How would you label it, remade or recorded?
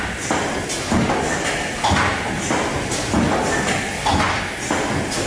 recorded